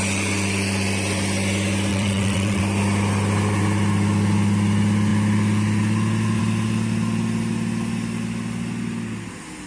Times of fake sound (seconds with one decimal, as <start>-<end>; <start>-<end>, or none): 1.9-2.6

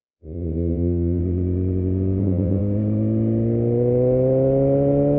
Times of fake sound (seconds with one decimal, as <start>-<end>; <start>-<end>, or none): 0.0-1.2; 2.2-2.6

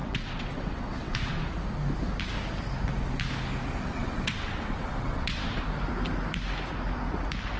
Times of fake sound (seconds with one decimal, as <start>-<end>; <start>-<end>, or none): 0.0-1.5; 3.9-5.6

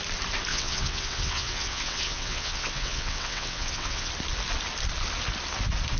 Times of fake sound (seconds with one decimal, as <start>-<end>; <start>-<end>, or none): 0.5-4.1